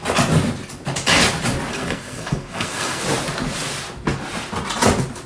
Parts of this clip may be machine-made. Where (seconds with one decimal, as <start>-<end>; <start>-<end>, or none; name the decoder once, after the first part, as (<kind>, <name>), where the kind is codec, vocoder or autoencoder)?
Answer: 1.7-3.0 (codec, SNAC)